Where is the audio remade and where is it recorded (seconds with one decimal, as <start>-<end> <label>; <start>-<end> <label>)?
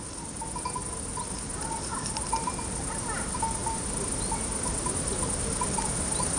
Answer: 0.0-6.4 recorded